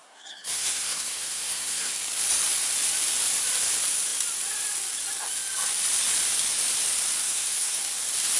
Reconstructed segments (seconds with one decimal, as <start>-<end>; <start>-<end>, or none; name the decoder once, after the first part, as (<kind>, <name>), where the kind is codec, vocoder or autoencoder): 0.0-1.9 (codec, SNAC); 7.2-7.8